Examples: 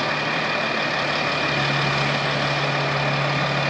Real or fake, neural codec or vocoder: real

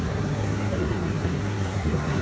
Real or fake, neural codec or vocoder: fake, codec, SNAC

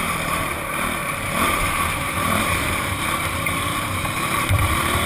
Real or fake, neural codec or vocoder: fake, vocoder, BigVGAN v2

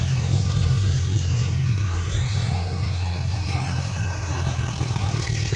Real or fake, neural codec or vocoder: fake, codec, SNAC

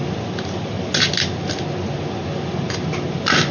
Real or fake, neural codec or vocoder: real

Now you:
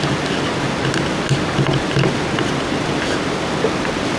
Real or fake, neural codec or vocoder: real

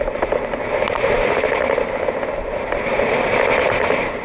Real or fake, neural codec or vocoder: real